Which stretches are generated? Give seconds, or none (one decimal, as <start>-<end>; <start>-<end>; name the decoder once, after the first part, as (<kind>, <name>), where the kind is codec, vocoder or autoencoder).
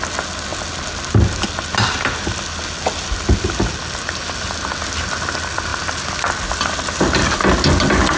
none